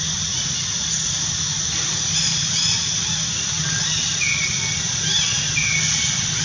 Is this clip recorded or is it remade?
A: recorded